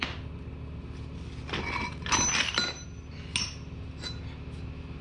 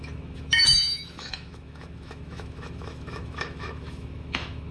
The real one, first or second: first